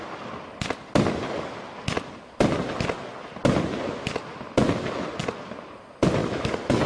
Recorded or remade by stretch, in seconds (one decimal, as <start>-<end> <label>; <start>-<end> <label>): 0.0-6.2 recorded; 6.2-6.9 remade